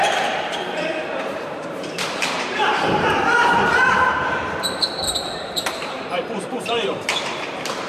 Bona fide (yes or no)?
no